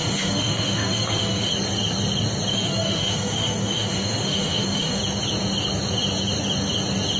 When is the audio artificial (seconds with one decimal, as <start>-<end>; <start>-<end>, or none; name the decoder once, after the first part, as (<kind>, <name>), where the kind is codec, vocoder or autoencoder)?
0.0-1.5 (autoencoder, DAC-VAE); 2.5-5.0